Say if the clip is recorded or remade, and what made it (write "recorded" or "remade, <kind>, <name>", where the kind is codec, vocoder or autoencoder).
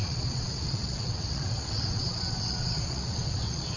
remade, vocoder, WaveNeXt